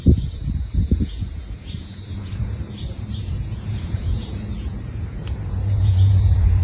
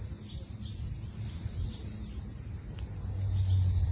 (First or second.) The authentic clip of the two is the second